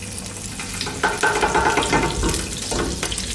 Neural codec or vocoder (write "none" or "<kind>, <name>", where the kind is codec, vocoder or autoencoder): none